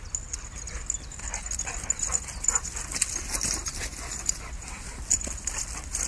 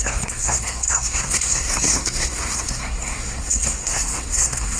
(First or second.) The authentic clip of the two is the first